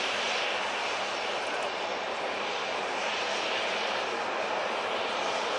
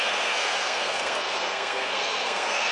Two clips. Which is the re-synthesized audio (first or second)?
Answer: second